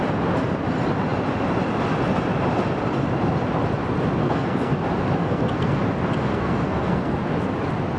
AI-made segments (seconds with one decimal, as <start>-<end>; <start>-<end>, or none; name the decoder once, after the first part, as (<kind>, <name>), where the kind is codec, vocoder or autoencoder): 4.2-4.7 (codec, SNAC); 5.2-5.8; 6.3-7.2